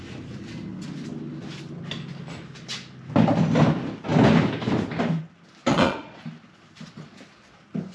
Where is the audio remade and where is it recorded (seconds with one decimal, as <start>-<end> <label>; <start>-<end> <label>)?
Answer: 0.0-5.7 recorded; 5.7-6.2 remade; 6.2-7.9 recorded